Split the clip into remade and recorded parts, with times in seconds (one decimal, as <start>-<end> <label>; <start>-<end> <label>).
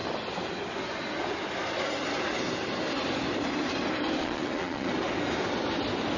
0.0-4.2 recorded; 4.2-4.9 remade; 4.9-6.2 recorded